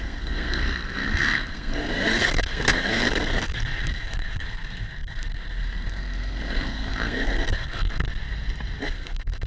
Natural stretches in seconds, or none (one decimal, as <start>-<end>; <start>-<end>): 8.1-8.9